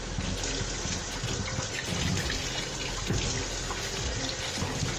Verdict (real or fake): real